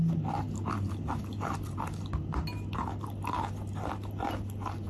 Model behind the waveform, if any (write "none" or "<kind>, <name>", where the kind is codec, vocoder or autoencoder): none